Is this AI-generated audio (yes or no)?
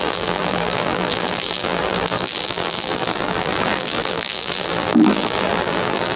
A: yes